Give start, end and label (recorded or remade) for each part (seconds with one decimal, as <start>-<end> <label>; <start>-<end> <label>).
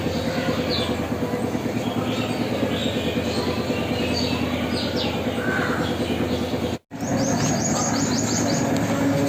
0.0-9.3 recorded